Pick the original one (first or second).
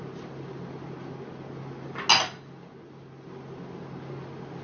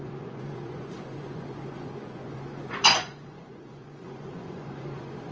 first